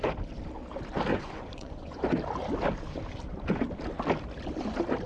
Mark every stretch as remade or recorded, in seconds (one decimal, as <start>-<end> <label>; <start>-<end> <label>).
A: 0.0-1.1 recorded; 1.1-2.0 remade; 2.0-5.1 recorded